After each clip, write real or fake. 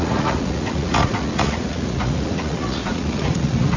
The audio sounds fake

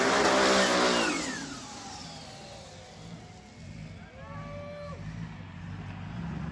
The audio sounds real